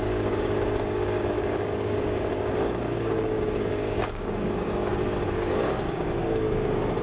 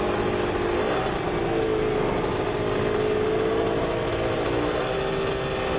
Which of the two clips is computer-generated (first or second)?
first